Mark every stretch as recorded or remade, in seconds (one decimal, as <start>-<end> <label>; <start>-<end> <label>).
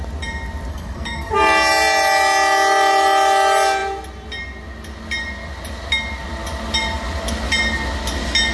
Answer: 0.0-0.7 recorded; 0.7-1.3 remade; 1.3-8.5 recorded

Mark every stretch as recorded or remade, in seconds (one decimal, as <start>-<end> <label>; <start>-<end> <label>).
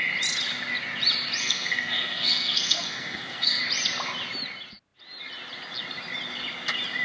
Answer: 0.0-1.4 recorded; 1.4-3.6 remade; 3.6-7.0 recorded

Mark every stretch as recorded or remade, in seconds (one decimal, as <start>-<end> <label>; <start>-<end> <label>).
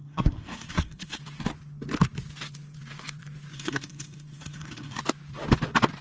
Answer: 0.0-1.2 remade; 1.2-3.5 recorded; 3.5-5.0 remade; 5.0-6.0 recorded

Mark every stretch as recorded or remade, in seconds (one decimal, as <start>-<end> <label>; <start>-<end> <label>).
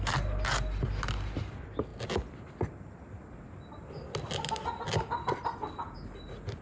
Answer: 0.0-6.6 recorded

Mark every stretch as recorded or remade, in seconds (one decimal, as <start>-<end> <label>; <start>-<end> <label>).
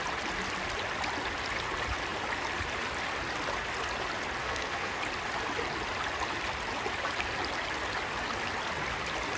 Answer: 0.0-4.4 recorded; 4.4-5.0 remade; 5.0-9.4 recorded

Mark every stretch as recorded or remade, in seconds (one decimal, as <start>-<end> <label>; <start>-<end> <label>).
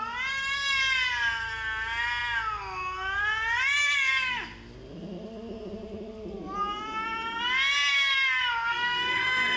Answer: 0.0-8.7 recorded; 8.7-9.6 remade